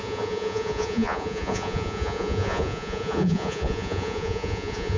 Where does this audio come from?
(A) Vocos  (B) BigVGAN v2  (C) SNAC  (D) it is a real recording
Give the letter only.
A